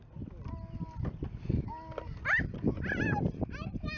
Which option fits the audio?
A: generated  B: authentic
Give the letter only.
B